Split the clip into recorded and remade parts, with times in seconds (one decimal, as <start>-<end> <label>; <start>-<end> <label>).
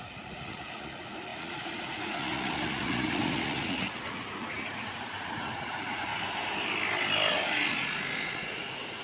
0.0-6.1 remade; 6.1-7.3 recorded; 7.3-9.0 remade